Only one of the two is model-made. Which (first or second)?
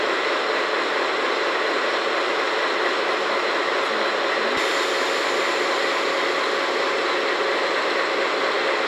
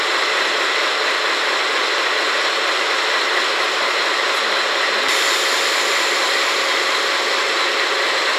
second